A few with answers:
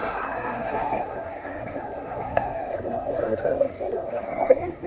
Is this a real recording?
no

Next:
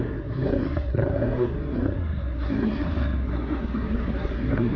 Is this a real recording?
no